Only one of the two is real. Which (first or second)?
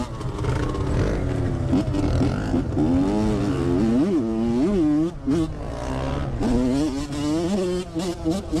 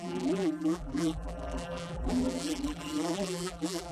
first